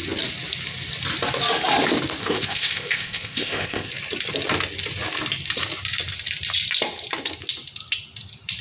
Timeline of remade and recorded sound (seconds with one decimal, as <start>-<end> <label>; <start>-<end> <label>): 0.0-2.2 recorded; 2.2-3.9 remade; 3.9-8.6 recorded